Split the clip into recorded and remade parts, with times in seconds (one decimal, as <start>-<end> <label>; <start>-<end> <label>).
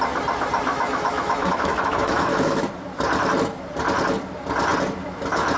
0.0-0.7 recorded; 0.7-2.6 remade; 2.6-5.6 recorded